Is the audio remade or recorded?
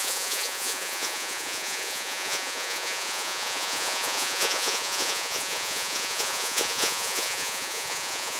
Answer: remade